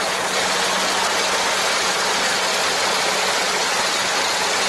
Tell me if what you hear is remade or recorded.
recorded